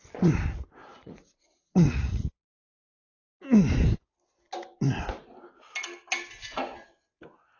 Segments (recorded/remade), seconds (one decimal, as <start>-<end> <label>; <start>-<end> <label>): 0.0-0.9 recorded; 0.9-3.2 remade; 3.2-7.6 recorded